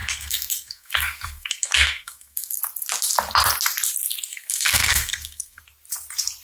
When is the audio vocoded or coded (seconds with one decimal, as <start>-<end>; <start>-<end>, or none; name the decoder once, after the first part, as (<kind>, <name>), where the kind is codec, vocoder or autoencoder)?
0.0-2.6 (codec, SNAC); 4.3-5.6